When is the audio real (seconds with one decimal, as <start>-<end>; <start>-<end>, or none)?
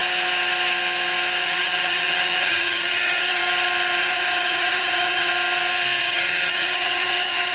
0.0-1.4; 3.4-4.0; 5.3-6.0